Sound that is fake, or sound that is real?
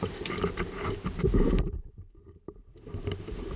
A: fake